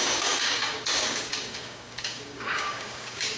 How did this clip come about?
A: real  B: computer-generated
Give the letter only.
B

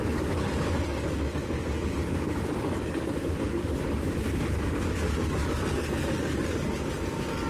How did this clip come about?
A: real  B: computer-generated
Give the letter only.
B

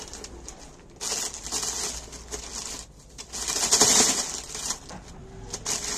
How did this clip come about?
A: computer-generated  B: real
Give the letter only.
B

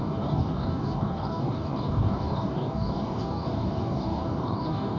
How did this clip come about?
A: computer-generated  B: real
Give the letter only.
A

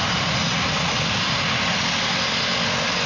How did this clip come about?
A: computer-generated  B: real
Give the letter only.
B